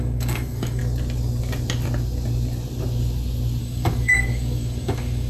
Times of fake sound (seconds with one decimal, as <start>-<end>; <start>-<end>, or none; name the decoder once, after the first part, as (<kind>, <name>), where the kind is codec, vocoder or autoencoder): 0.0-0.8 (codec, DAC); 3.6-5.3